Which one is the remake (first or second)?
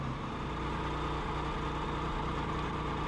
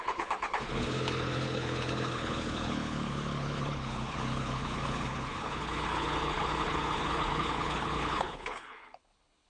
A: second